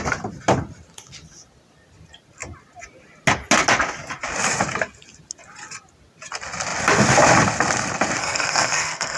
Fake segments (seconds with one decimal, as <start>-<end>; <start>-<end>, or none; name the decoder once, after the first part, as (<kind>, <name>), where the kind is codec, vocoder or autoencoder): 8.2-9.2 (codec, SNAC)